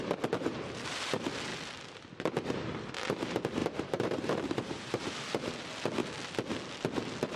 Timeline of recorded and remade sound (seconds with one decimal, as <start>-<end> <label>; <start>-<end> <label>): 0.0-3.6 recorded; 3.6-5.1 remade; 5.1-7.4 recorded